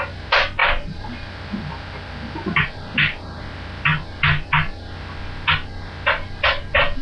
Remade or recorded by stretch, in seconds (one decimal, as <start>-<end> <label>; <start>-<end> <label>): 0.0-0.6 recorded; 0.6-3.4 remade; 3.4-7.0 recorded